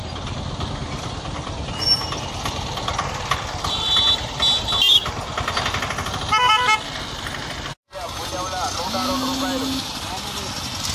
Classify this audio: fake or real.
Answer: real